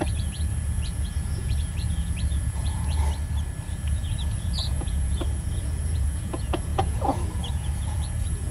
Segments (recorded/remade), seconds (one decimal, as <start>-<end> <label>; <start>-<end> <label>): 0.0-3.0 remade; 3.0-3.7 recorded; 3.7-8.5 remade